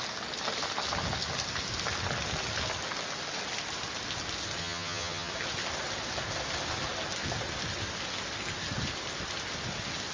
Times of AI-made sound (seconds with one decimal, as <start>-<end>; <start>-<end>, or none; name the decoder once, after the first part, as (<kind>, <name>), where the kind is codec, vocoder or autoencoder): 4.6-5.3 (vocoder, HiFi-GAN)